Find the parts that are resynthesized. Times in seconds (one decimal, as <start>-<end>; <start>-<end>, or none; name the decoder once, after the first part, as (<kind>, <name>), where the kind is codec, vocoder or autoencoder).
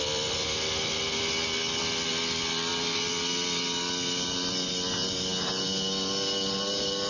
none